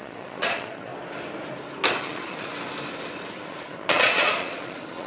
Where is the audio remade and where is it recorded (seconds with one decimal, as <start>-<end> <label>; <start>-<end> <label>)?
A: 0.0-0.9 remade; 0.9-2.0 recorded; 2.0-2.5 remade; 2.5-3.3 recorded; 3.3-5.1 remade